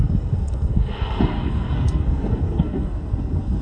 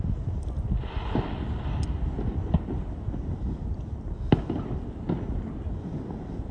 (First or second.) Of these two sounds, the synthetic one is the first